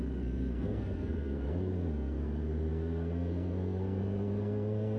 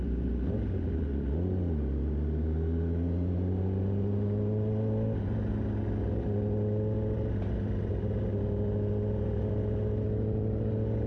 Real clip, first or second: second